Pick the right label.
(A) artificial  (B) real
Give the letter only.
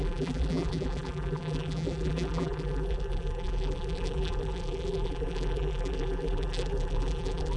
A